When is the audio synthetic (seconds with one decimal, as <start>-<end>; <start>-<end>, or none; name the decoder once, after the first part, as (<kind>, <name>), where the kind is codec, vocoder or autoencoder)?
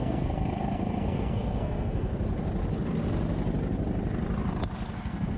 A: 0.0-2.1 (codec, SNAC); 4.9-5.4